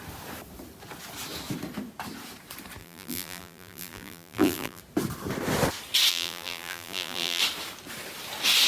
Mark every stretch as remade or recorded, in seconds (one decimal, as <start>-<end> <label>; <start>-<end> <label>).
0.0-2.8 recorded; 2.8-4.8 remade; 4.8-6.1 recorded; 6.1-7.4 remade; 7.4-8.7 recorded